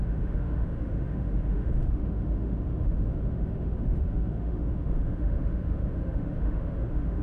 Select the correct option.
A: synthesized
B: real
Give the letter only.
A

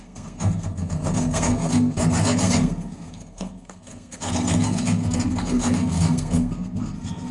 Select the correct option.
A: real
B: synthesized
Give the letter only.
B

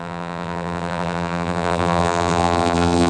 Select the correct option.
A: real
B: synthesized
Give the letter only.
B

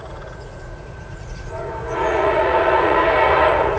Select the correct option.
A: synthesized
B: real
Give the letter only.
A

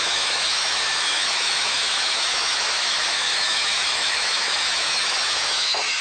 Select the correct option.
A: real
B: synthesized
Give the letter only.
B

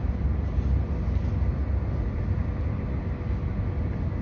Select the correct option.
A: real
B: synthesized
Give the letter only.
A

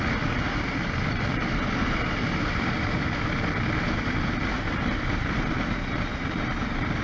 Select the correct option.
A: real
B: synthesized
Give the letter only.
A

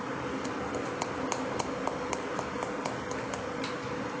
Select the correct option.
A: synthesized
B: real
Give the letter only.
B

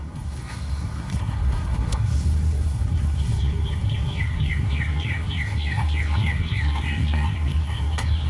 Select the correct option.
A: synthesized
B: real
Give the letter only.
A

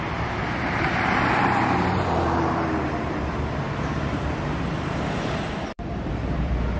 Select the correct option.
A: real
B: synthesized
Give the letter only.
B